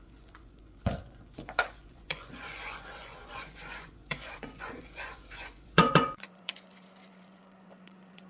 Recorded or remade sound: remade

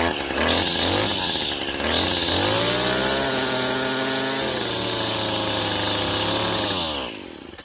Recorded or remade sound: recorded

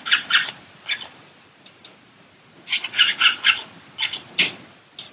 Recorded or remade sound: recorded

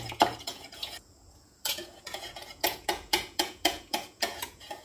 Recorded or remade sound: remade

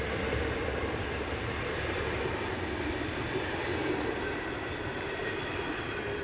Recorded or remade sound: recorded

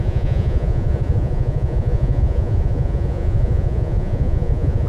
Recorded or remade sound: remade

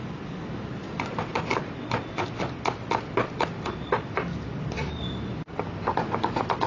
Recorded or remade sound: recorded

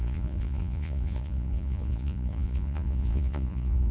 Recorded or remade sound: remade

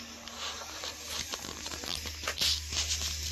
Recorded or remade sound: recorded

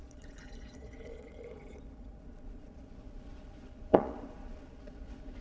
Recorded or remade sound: remade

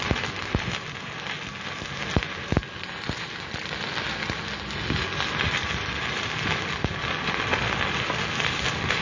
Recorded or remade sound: recorded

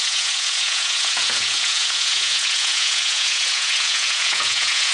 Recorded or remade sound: remade